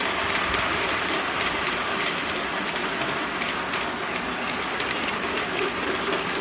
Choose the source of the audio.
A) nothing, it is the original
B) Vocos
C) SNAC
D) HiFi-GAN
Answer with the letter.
A